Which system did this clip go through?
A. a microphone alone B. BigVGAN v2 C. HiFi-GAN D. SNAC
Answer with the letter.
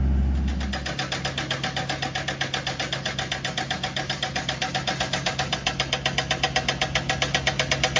A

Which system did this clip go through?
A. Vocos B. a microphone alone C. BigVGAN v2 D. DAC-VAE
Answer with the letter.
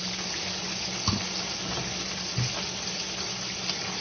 B